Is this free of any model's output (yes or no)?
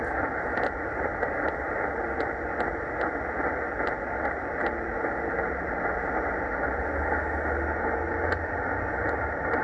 yes